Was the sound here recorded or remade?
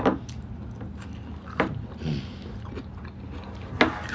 recorded